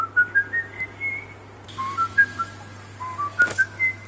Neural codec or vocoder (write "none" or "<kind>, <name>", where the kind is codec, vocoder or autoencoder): none